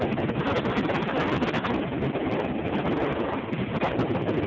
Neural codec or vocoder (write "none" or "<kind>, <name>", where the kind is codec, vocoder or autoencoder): none